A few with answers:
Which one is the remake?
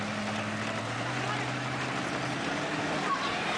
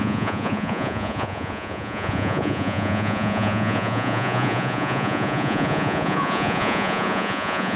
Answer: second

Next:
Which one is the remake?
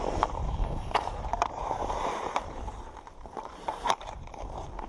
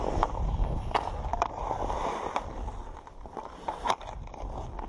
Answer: first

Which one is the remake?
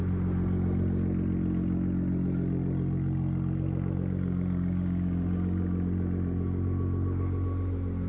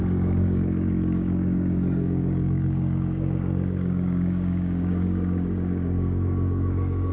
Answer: second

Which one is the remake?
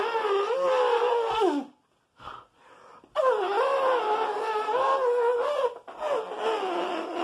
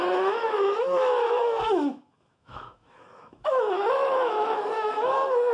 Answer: second